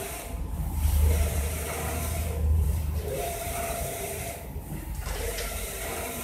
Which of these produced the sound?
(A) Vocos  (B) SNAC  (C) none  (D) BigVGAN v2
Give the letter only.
D